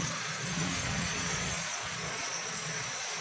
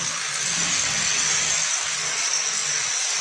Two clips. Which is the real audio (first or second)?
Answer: second